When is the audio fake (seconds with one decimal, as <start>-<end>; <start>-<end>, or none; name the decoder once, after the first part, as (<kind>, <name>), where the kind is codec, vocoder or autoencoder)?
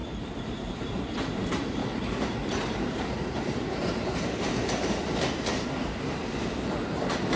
0.0-7.4 (vocoder, BigVGAN v2)